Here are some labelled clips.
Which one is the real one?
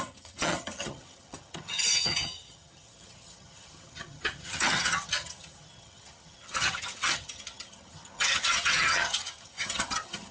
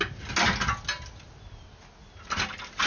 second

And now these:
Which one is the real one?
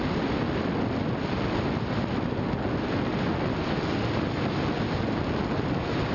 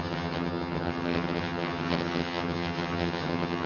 first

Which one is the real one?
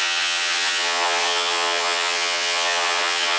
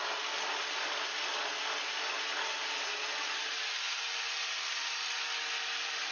second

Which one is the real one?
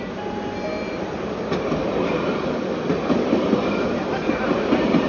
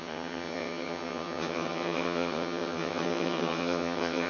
first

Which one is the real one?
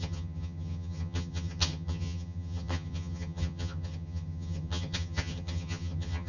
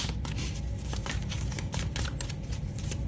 second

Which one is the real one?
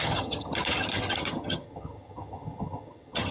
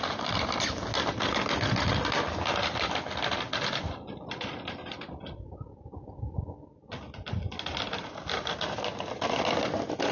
second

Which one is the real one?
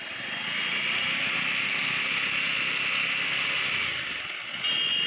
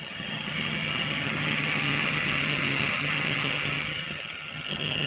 first